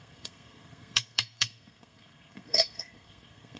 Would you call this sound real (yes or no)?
no